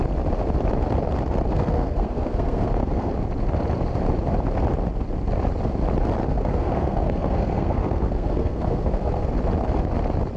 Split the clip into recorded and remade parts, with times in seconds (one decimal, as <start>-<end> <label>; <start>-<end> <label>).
0.0-1.5 recorded; 1.5-3.1 remade; 3.1-6.2 recorded; 6.2-9.3 remade; 9.3-10.4 recorded